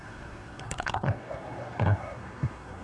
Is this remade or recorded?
remade